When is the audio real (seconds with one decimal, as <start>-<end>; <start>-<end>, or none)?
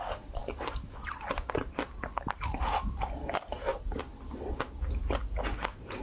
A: 0.0-6.0